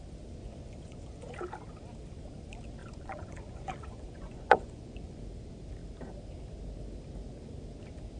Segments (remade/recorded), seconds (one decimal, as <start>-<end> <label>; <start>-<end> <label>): 0.0-0.4 recorded; 0.4-1.3 remade; 1.3-2.8 recorded; 2.8-5.2 remade; 5.2-8.2 recorded